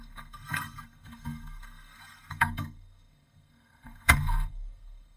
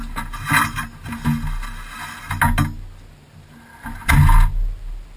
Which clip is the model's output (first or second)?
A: first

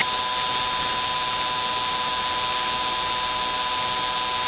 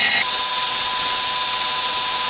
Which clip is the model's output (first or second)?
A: second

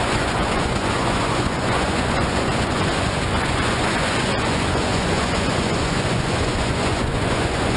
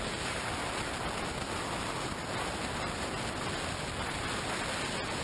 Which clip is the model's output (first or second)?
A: first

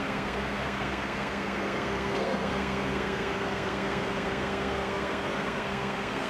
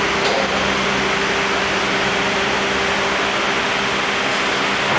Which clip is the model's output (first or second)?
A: first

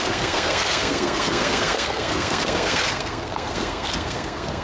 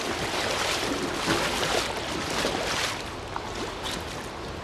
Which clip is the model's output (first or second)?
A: first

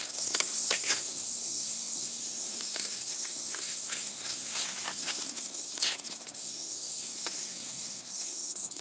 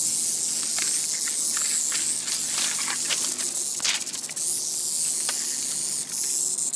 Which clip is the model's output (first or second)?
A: first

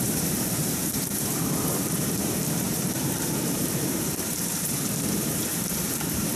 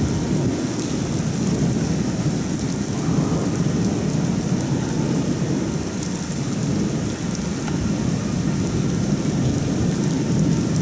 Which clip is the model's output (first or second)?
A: first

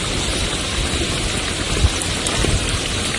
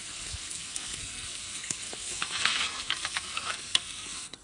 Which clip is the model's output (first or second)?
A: second